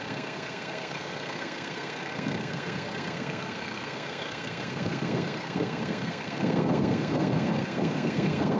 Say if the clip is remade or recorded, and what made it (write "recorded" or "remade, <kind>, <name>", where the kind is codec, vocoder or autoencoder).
remade, codec, SNAC